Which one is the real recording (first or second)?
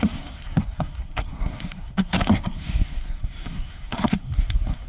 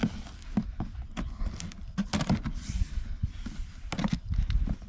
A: second